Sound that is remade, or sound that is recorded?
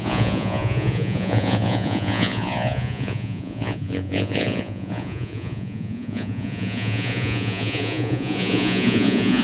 remade